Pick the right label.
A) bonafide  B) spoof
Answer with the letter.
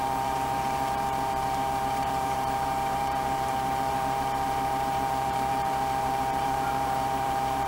B